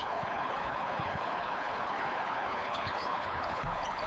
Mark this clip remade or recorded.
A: remade